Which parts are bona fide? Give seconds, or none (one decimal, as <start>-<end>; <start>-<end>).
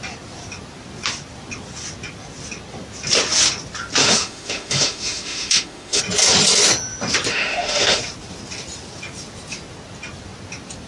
0.0-4.0; 6.0-7.3; 8.0-10.9